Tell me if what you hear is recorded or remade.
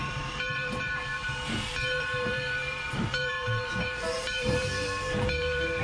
remade